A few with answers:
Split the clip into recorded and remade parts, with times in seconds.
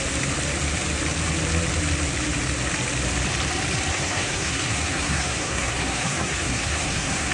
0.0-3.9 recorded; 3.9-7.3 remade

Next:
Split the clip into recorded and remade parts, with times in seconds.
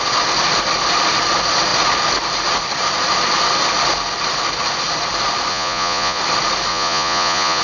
0.0-5.5 recorded; 5.5-6.2 remade; 6.2-6.7 recorded; 6.7-7.6 remade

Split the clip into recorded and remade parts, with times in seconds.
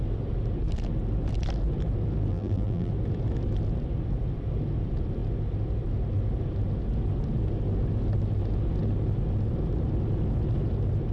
0.0-2.3 recorded; 2.3-2.9 remade; 2.9-11.1 recorded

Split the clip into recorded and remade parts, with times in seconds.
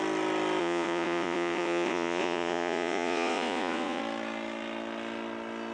0.0-0.6 recorded; 0.6-4.0 remade; 4.0-5.7 recorded